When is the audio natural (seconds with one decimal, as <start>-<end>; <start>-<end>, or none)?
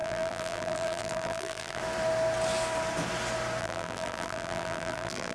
1.8-3.6